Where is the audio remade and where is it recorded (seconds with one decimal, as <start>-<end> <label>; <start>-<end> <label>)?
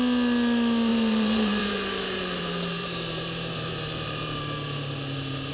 0.0-0.9 recorded; 0.9-4.2 remade; 4.2-5.5 recorded